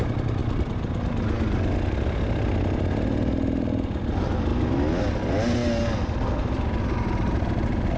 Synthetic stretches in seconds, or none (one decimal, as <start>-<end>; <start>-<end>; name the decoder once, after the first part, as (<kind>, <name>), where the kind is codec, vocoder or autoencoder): none